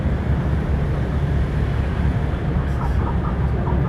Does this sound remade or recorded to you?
recorded